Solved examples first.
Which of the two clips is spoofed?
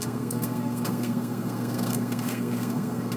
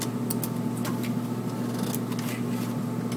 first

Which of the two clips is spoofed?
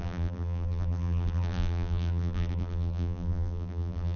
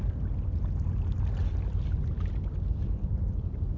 first